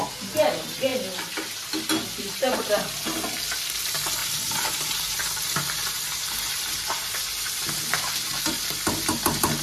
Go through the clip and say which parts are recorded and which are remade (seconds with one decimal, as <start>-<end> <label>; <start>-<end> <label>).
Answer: 0.0-4.2 recorded; 4.2-8.7 remade; 8.7-9.6 recorded